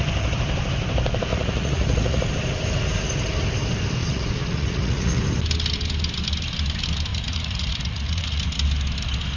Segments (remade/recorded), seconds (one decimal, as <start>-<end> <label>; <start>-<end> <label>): 0.0-1.3 recorded; 1.3-2.3 remade; 2.3-4.0 recorded; 4.0-5.2 remade; 5.2-7.1 recorded; 7.1-8.4 remade; 8.4-9.4 recorded